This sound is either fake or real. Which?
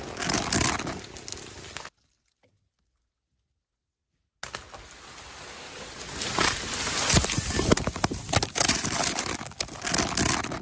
real